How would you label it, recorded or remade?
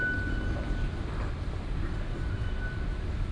recorded